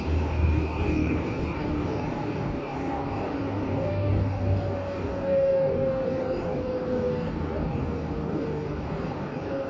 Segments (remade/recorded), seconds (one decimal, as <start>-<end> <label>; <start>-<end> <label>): 0.0-9.7 remade

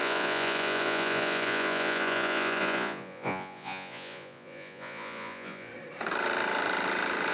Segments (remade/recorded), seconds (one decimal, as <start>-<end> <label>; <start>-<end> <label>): 0.0-5.7 remade; 5.7-7.3 recorded

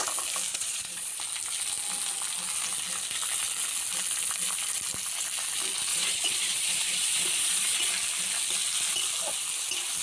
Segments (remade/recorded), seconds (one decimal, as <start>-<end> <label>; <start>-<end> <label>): 0.0-0.5 recorded; 0.5-1.2 remade; 1.2-5.9 recorded; 5.9-7.9 remade; 7.9-10.0 recorded

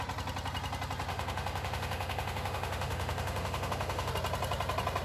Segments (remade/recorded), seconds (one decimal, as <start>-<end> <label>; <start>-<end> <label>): 0.0-1.1 recorded; 1.1-4.1 remade; 4.1-5.0 recorded

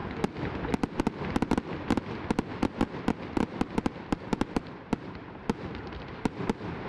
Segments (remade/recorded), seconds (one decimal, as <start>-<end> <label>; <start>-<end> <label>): 0.0-6.9 recorded

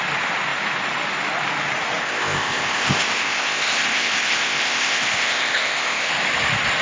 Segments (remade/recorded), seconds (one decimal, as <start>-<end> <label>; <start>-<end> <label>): 0.0-2.0 recorded; 2.0-6.1 remade; 6.1-6.8 recorded